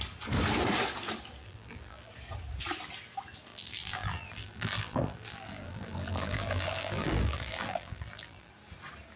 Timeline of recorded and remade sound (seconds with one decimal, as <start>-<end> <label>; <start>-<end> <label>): 0.0-1.4 recorded; 1.4-2.1 remade; 2.1-3.5 recorded; 3.5-8.5 remade; 8.5-9.2 recorded